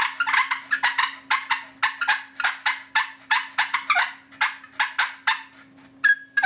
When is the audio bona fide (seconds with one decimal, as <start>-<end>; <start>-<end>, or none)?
0.0-6.5